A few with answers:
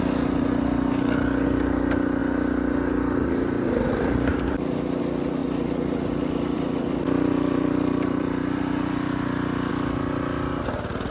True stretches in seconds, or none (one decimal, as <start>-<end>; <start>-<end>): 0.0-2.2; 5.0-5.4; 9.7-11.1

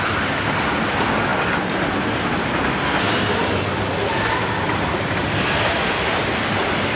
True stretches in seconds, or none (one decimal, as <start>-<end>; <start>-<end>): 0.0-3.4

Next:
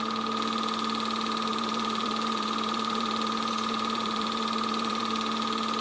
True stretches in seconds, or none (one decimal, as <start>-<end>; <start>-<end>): 0.0-1.5; 5.0-5.8